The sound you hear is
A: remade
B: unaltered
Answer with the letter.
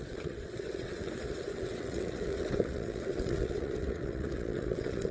A